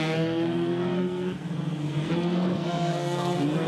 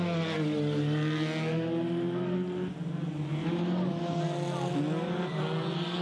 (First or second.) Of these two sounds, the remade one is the first